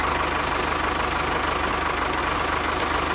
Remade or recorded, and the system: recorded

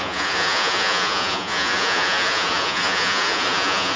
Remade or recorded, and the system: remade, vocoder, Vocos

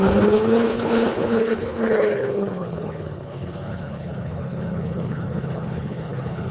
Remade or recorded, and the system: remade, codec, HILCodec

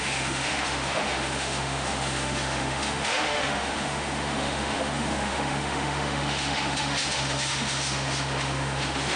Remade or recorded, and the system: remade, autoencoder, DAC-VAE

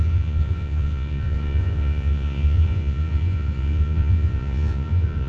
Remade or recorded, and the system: remade, vocoder, Vocos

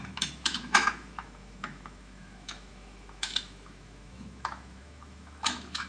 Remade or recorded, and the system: remade, autoencoder, DAC-VAE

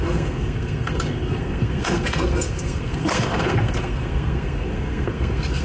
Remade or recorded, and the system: remade, codec, SNAC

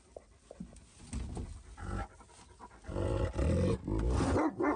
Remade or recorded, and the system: recorded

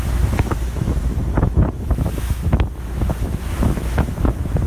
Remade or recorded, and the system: remade, autoencoder, DAC-VAE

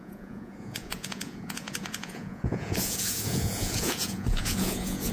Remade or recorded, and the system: remade, vocoder, Vocos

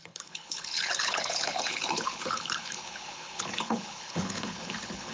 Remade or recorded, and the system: remade, codec, HILCodec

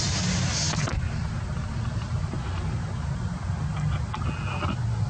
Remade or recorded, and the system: recorded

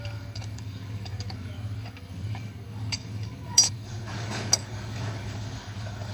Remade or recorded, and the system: remade, codec, DAC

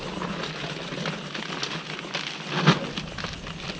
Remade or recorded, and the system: recorded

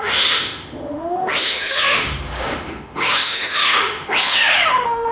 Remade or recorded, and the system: remade, autoencoder, DAC-VAE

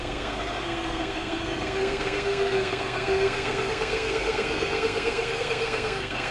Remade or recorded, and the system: remade, codec, SNAC